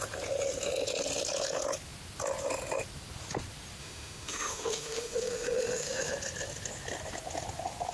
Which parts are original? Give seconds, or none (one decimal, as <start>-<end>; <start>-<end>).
0.0-3.8; 6.1-7.9